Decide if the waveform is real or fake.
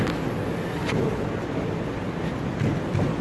real